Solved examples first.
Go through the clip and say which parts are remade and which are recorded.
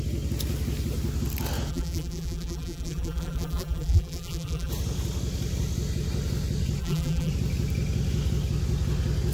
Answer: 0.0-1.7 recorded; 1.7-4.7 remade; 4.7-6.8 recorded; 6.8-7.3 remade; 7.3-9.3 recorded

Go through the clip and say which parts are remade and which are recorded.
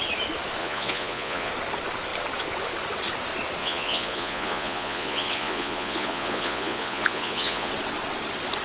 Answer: 0.0-0.6 recorded; 0.6-1.5 remade; 1.5-3.6 recorded; 3.6-7.7 remade; 7.7-8.6 recorded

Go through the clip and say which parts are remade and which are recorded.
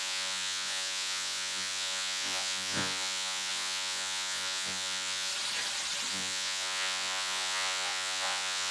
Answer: 0.0-5.3 remade; 5.3-6.1 recorded; 6.1-8.7 remade